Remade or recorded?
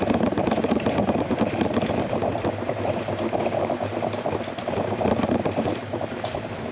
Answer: remade